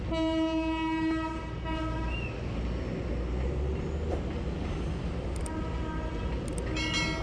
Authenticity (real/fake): real